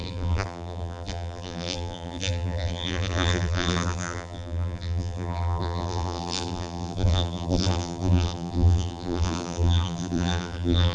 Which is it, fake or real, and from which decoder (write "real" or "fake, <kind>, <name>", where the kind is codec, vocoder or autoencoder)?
fake, vocoder, BigVGAN v2